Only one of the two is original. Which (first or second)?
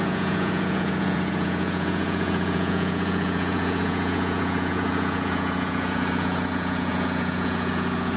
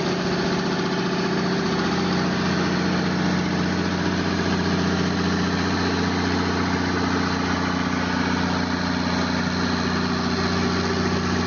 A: second